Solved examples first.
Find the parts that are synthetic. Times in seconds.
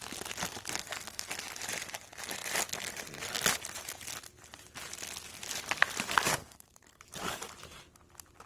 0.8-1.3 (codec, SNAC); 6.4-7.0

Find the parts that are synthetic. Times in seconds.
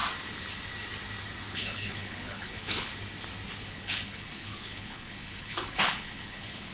1.4-2.9 (codec, HILCodec); 3.6-6.7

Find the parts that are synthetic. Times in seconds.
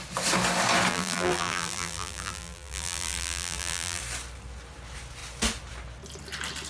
0.9-4.0 (vocoder, BigVGAN v2)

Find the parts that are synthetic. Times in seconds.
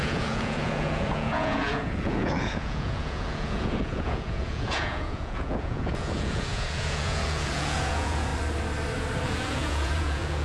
0.0-8.3 (vocoder, Vocos); 9.2-10.4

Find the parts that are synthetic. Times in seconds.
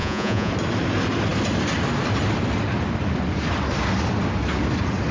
0.0-0.5 (vocoder, Vocos)